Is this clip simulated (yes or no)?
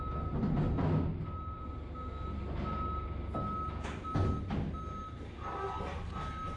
no